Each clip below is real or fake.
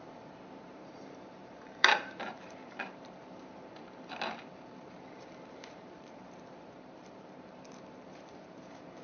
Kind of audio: fake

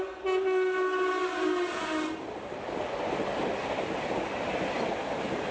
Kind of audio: real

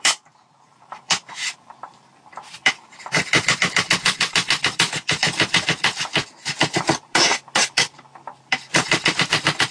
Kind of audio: fake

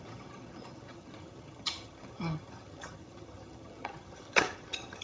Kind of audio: fake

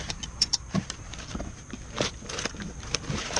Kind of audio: fake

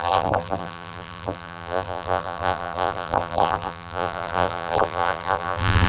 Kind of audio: fake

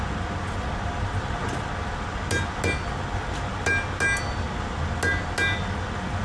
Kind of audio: real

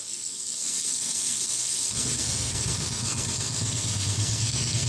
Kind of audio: fake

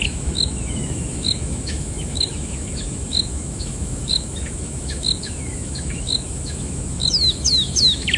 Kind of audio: fake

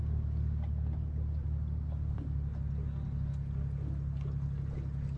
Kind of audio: real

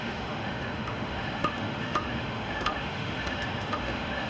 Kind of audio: fake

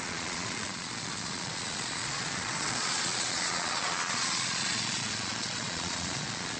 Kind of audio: fake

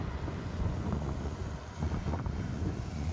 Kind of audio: fake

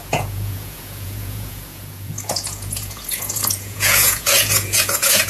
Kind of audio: fake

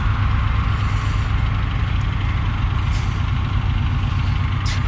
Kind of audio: real